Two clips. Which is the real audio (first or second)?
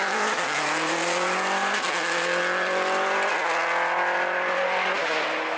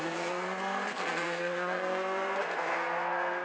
first